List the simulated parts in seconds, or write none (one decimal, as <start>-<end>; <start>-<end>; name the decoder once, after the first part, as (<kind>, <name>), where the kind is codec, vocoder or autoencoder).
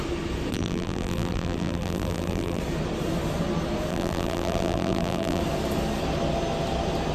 0.5-2.6 (vocoder, BigVGAN v2); 3.9-5.4